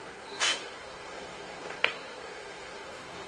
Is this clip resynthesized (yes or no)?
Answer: yes